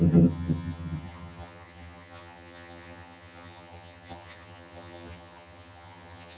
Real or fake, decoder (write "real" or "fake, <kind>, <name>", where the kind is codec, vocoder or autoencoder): fake, vocoder, HiFi-GAN